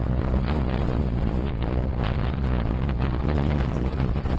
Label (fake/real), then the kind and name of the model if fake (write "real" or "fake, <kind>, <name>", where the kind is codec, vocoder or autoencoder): fake, vocoder, Vocos